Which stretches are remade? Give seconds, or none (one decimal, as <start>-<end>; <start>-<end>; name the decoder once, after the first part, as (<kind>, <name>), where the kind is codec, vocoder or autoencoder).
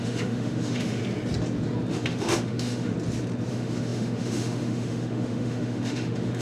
0.0-1.0 (autoencoder, DAC-VAE); 1.9-2.9; 3.5-6.4